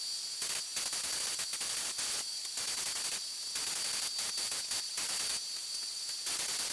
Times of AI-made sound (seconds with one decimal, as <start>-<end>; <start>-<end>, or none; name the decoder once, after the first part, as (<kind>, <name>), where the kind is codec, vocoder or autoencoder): none